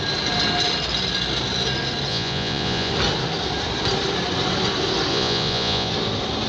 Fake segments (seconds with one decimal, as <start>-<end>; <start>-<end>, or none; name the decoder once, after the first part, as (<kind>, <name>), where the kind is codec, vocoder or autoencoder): 2.1-2.9 (vocoder, Vocos); 5.1-5.9